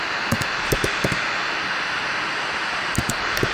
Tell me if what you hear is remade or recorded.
recorded